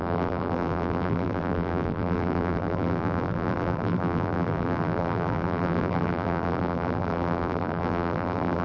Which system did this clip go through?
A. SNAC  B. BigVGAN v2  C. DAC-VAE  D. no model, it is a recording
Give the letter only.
B